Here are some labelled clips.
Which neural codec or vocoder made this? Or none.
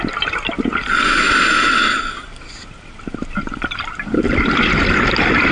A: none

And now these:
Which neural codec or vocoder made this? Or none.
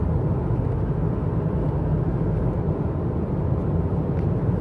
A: none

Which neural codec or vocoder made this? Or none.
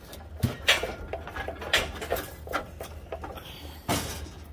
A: none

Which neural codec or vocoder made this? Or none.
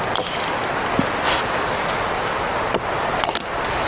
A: none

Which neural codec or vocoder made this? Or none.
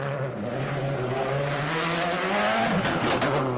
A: none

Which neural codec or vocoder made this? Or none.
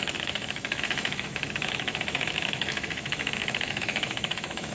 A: autoencoder, DAC-VAE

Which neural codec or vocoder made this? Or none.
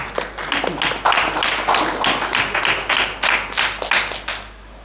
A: none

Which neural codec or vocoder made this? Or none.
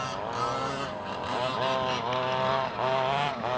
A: none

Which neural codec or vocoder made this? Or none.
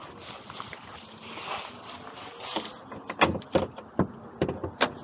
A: none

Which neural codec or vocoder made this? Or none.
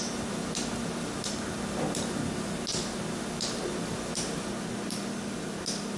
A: none